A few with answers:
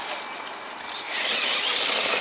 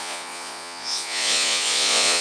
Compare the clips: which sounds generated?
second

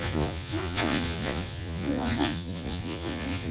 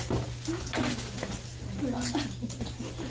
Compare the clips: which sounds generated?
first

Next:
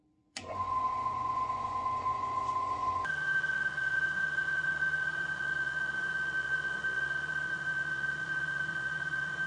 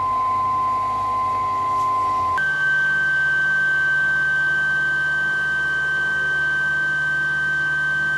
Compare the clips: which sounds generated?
first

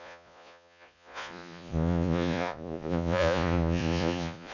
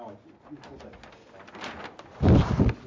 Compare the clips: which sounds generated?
first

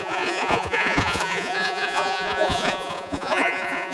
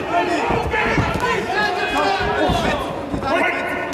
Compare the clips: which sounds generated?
first